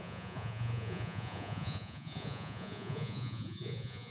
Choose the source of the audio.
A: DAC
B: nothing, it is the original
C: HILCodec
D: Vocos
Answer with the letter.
D